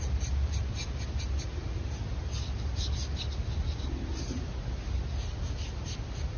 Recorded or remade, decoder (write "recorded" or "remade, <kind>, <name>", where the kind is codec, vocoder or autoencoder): recorded